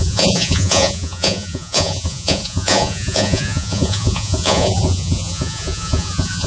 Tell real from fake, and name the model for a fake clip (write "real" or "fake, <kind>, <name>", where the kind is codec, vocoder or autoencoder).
fake, vocoder, Vocos